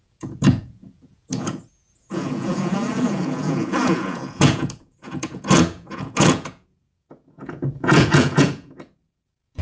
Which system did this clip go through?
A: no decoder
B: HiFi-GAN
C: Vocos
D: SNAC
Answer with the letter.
C